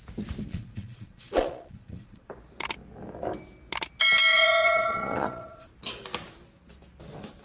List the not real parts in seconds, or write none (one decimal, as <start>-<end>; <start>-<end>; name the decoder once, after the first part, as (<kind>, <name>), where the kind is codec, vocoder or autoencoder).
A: 0.5-2.3 (vocoder, Vocos); 4.3-5.7